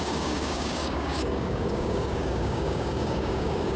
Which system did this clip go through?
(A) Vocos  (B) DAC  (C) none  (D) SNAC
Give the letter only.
B